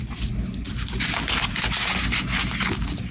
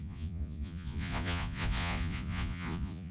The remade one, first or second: second